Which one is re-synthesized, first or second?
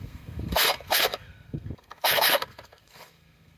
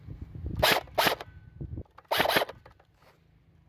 first